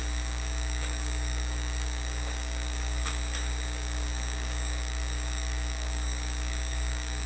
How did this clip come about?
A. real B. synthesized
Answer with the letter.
B